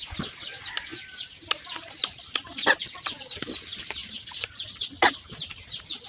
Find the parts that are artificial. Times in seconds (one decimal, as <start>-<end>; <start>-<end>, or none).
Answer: none